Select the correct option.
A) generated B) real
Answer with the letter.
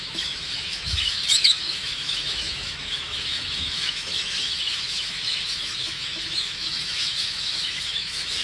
A